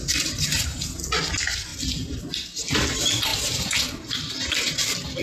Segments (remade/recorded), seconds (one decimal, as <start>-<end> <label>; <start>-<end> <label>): 0.0-0.8 remade; 0.8-3.3 recorded; 3.3-4.3 remade; 4.3-5.2 recorded